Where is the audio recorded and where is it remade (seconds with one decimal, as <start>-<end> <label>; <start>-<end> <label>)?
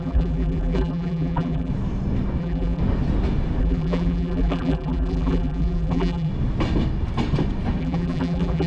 0.0-1.7 remade; 1.7-2.4 recorded; 2.4-2.8 remade; 2.8-3.6 recorded; 3.6-6.3 remade; 6.3-7.8 recorded; 7.8-8.7 remade